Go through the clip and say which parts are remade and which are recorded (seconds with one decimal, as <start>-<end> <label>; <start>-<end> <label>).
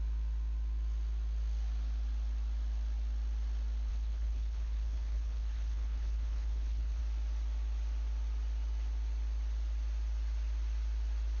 0.0-3.9 recorded; 3.9-7.0 remade; 7.0-11.4 recorded